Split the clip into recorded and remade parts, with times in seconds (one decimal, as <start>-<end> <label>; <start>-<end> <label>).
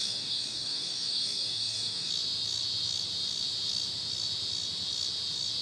0.0-2.1 remade; 2.1-5.6 recorded